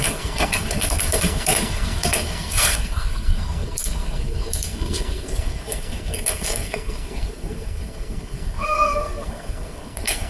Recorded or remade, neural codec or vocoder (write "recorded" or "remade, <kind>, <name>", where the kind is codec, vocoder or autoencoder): remade, codec, SNAC